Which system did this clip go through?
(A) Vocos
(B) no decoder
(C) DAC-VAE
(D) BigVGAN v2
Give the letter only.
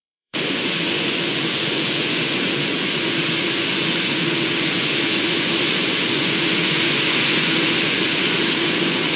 A